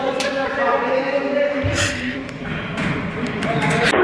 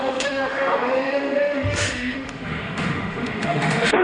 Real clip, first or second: first